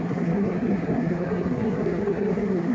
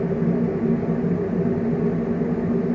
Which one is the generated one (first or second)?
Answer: first